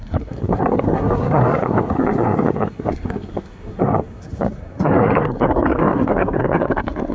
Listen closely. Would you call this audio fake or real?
fake